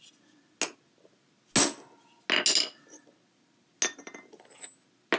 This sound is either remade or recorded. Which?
recorded